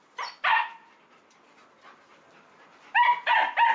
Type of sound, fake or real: real